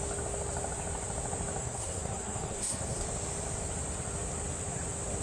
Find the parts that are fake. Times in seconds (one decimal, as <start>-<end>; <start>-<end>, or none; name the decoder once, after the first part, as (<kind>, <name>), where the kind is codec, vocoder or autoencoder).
1.6-3.0 (codec, SNAC)